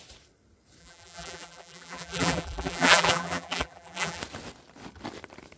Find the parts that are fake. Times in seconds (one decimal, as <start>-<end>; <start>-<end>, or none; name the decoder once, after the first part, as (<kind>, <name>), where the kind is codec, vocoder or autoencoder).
0.8-4.2 (vocoder, BigVGAN v2)